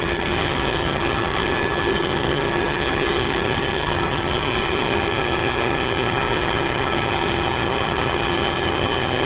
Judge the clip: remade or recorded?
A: remade